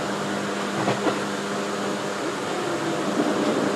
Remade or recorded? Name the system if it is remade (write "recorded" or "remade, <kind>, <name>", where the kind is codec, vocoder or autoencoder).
recorded